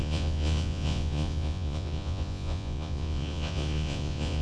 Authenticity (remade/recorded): remade